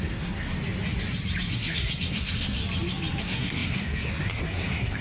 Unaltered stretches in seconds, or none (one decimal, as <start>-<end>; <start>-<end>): 0.5-1.5; 2.6-3.2